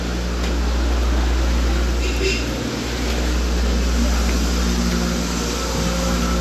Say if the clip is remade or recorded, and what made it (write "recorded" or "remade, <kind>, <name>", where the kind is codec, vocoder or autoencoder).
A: recorded